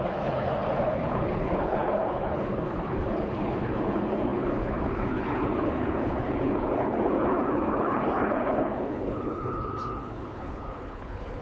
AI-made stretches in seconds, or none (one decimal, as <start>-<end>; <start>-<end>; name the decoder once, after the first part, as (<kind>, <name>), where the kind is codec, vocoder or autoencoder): 0.0-11.4 (codec, HILCodec)